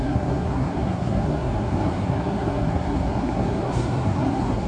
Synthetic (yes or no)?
yes